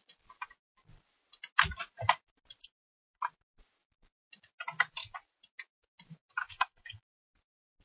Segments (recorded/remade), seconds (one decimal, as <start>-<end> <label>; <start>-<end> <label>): 0.0-2.6 recorded; 2.6-3.2 remade; 3.2-6.4 recorded; 6.4-7.0 remade; 7.0-7.8 recorded